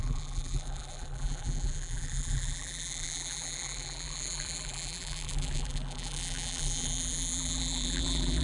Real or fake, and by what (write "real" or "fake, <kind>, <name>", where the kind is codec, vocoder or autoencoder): fake, vocoder, BigVGAN v2